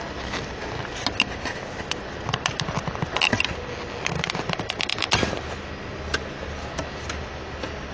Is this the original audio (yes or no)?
yes